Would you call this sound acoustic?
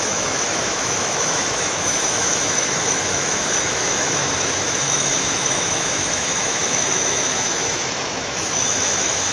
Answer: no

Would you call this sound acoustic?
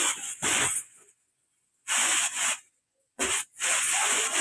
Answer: no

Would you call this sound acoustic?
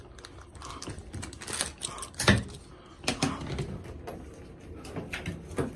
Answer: yes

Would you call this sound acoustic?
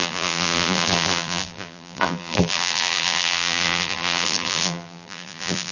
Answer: no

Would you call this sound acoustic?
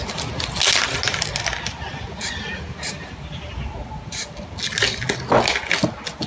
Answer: yes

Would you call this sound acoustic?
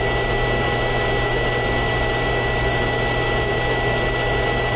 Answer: yes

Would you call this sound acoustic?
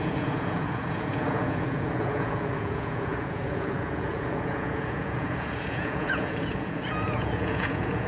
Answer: no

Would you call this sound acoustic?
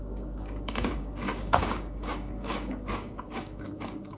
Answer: no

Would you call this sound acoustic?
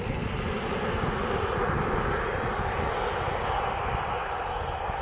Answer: yes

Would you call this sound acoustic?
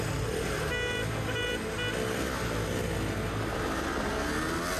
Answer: yes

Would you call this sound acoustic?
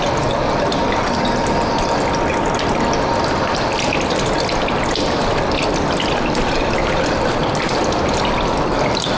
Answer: no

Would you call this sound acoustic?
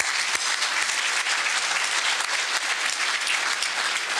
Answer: yes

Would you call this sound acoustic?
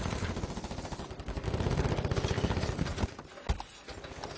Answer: yes